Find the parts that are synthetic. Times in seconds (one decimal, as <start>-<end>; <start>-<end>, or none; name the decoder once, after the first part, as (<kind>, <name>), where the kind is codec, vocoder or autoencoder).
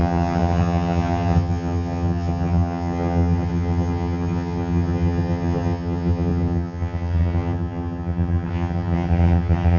0.0-9.8 (vocoder, HiFi-GAN)